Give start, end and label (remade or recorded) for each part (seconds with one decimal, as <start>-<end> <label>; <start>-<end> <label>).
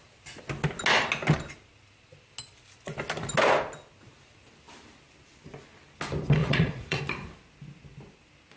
0.0-6.4 recorded; 6.4-7.0 remade; 7.0-8.6 recorded